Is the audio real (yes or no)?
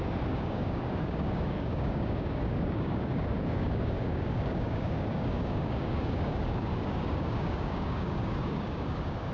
no